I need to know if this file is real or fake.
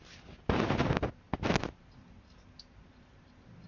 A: real